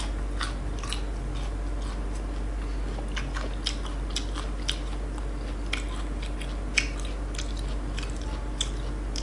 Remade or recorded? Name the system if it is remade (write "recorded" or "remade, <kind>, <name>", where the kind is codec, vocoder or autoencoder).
recorded